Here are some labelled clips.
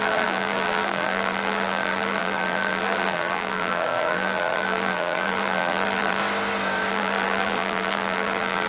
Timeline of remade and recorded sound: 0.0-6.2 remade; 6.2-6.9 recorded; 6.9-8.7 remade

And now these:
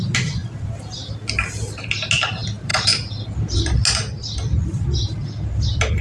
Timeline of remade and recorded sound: 0.0-6.0 recorded

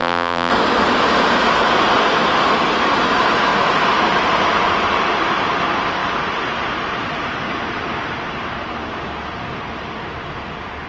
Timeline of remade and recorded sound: 0.0-0.5 remade; 0.5-10.9 recorded

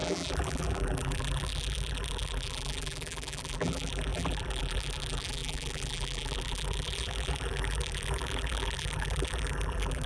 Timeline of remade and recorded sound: 0.0-10.1 remade

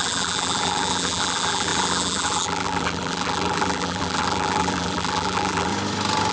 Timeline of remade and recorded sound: 0.0-5.7 remade; 5.7-6.3 recorded